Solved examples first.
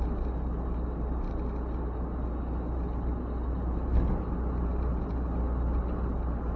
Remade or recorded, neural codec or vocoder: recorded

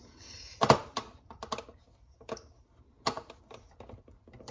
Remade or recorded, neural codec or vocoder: recorded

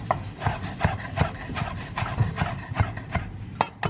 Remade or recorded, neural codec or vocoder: recorded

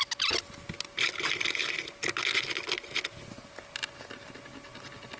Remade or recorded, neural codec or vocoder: recorded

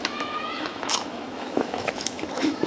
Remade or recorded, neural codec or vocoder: remade, autoencoder, DAC-VAE